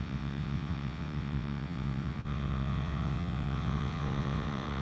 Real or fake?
fake